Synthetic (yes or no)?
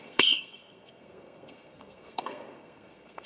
yes